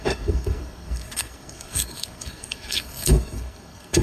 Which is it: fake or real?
fake